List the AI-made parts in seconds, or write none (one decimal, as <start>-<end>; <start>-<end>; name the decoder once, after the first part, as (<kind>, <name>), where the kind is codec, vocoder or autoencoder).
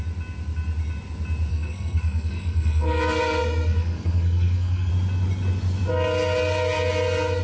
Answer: 1.5-4.9 (codec, SNAC)